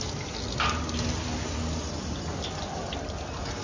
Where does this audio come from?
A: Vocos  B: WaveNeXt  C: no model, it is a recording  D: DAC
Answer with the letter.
C